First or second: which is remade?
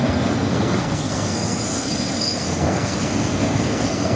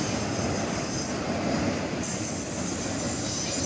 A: first